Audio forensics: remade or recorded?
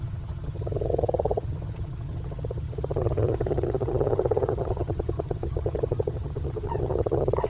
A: remade